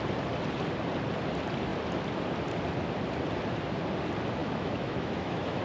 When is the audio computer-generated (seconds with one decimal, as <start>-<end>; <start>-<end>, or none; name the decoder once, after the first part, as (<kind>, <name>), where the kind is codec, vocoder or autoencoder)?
4.4-5.6 (autoencoder, DAC-VAE)